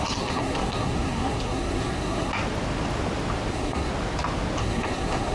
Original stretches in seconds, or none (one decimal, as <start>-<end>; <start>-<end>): 2.3-3.5; 3.9-4.6